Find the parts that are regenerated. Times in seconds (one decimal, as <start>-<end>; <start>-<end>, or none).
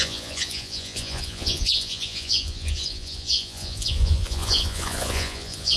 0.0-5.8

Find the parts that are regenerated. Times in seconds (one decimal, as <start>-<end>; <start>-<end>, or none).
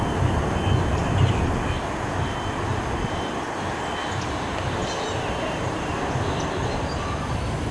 none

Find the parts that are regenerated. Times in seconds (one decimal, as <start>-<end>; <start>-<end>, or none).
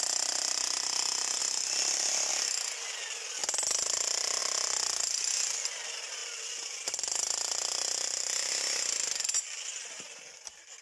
1.4-2.3; 6.2-9.9